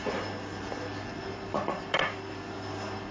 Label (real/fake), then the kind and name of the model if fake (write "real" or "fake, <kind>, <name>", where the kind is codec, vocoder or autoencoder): real